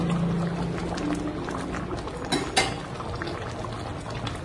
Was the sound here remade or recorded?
recorded